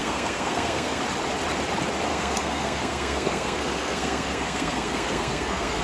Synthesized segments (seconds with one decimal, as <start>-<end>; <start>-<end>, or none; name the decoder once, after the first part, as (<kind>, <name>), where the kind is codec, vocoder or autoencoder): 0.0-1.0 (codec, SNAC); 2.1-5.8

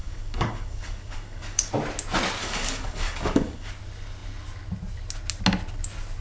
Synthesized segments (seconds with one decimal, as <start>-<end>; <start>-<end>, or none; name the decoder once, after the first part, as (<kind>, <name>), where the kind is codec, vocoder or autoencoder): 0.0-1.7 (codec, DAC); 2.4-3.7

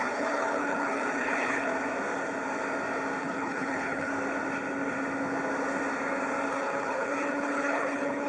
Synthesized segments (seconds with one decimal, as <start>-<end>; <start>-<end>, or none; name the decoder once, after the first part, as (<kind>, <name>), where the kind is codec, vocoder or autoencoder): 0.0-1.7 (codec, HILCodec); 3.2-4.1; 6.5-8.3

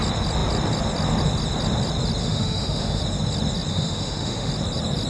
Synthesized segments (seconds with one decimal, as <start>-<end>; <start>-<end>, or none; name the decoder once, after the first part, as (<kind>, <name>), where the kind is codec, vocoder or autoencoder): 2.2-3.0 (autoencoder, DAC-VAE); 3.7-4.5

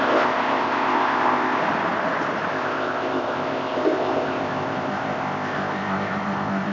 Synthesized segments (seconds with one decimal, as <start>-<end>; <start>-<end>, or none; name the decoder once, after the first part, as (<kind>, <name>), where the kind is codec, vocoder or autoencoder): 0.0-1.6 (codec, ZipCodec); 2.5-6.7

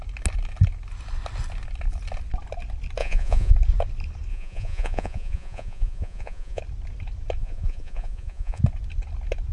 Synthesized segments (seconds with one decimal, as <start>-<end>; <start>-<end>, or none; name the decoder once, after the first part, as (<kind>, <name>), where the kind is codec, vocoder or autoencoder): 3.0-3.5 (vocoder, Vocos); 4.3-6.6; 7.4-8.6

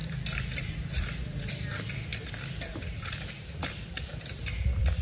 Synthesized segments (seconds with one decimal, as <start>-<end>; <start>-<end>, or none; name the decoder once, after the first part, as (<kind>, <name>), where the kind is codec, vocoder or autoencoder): none

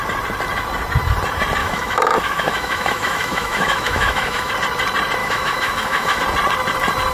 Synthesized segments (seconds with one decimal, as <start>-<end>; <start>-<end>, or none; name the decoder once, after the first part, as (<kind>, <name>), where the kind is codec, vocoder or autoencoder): 1.6-4.5 (autoencoder, DAC-VAE); 5.2-6.2